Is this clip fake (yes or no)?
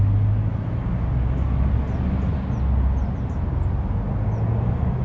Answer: no